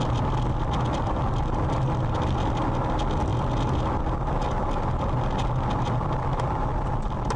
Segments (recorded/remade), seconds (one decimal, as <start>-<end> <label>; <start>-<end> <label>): 0.0-7.4 recorded